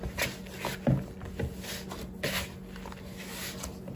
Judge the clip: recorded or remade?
recorded